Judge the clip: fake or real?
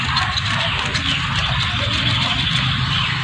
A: real